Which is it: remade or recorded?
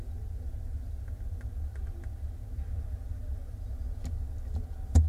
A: recorded